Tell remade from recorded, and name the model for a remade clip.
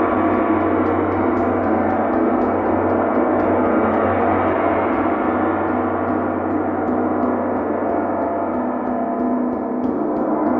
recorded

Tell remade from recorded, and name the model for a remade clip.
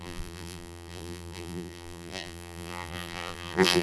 remade, vocoder, BigVGAN v2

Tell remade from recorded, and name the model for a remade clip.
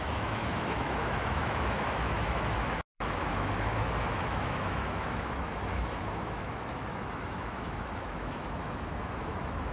remade, autoencoder, DAC-VAE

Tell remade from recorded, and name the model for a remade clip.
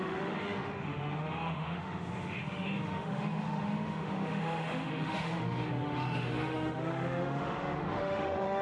remade, autoencoder, DAC-VAE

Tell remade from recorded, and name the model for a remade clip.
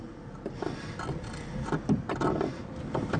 recorded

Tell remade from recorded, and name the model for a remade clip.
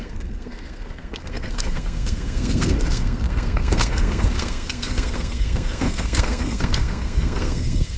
remade, codec, SNAC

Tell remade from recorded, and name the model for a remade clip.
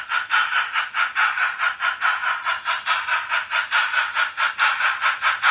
remade, vocoder, BigVGAN v2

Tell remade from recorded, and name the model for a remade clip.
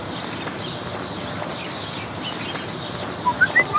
recorded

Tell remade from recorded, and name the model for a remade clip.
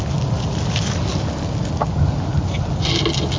recorded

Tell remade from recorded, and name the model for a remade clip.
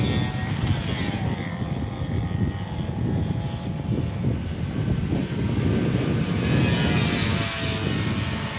recorded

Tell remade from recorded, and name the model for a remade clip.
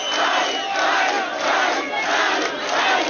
recorded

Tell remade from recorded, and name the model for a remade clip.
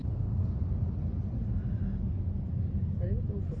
recorded